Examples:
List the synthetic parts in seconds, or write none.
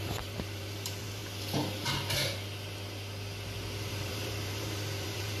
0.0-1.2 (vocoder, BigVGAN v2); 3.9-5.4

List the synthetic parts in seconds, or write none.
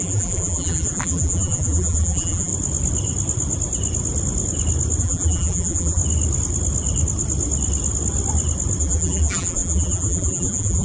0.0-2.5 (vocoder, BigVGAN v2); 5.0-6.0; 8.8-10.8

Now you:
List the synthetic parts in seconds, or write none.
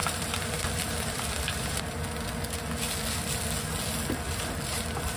0.0-1.7 (vocoder, BigVGAN v2)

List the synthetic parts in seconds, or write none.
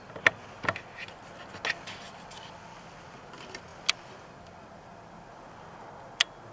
none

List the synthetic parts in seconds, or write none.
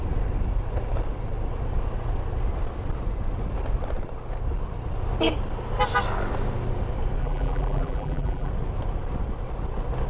7.2-8.5 (vocoder, BigVGAN v2)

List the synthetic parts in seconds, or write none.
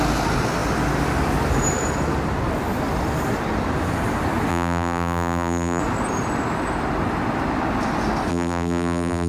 4.5-5.8 (vocoder, BigVGAN v2); 8.3-9.3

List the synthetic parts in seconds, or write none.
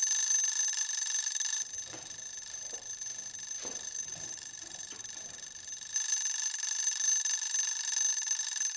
3.7-4.9 (vocoder, BigVGAN v2)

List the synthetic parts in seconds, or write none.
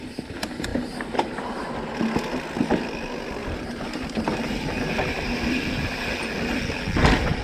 0.7-1.7 (vocoder, BigVGAN v2); 3.4-5.6